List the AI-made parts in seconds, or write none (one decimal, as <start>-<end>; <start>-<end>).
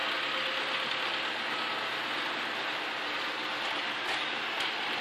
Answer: none